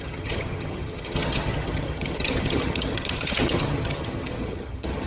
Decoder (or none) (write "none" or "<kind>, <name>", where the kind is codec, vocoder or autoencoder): vocoder, HiFi-GAN